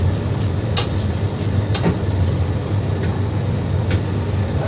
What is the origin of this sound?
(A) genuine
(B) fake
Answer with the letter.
A